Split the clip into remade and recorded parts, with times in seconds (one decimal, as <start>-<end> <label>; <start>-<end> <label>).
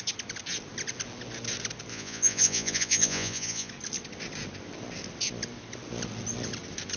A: 0.0-1.9 recorded; 1.9-3.7 remade; 3.7-7.0 recorded